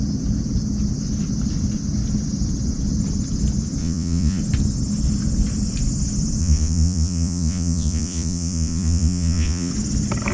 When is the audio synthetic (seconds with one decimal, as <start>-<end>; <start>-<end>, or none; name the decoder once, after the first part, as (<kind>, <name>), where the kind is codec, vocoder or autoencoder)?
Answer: 3.8-4.4 (vocoder, Vocos); 6.4-9.7